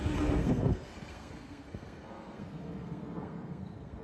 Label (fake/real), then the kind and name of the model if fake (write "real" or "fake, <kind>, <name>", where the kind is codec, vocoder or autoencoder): fake, codec, SNAC